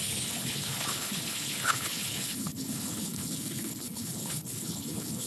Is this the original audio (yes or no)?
no